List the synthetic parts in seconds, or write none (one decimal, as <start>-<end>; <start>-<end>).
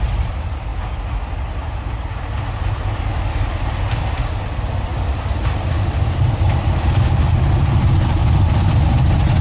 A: 0.0-0.7; 3.3-4.9; 5.7-8.2